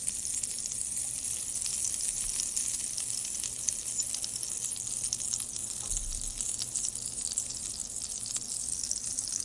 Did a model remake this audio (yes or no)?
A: no